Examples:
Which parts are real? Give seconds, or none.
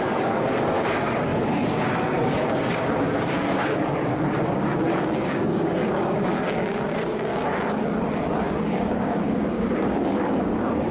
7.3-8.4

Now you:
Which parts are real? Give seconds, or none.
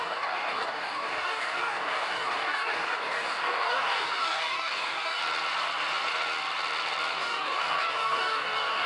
5.2-7.1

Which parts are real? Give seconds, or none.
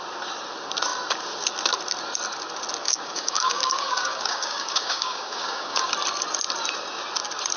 0.0-2.8; 5.9-7.6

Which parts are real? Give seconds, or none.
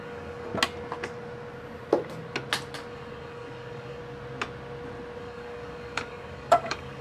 0.5-2.9; 4.0-5.2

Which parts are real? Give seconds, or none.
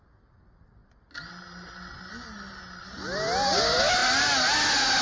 0.0-5.0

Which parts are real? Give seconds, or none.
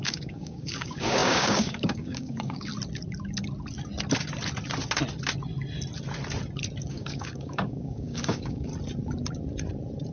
2.7-6.9; 8.7-10.1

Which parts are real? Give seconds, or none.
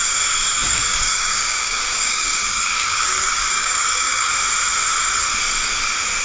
0.0-0.6; 4.3-6.2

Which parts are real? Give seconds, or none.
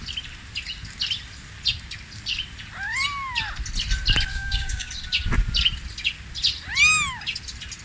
0.0-4.3; 4.9-7.8